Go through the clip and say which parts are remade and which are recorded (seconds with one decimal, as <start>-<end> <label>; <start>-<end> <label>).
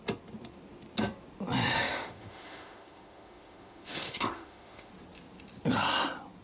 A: 0.0-1.7 recorded; 1.7-4.9 remade; 4.9-6.4 recorded